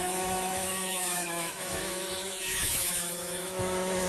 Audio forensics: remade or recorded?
remade